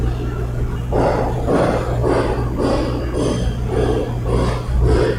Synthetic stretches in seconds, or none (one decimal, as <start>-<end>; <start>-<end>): none